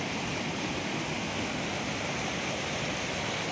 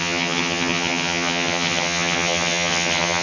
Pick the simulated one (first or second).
second